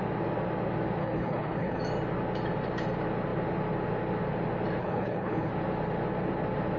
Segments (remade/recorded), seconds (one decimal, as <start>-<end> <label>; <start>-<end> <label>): 0.0-1.0 recorded; 1.0-1.8 remade; 1.8-4.8 recorded; 4.8-5.5 remade; 5.5-6.8 recorded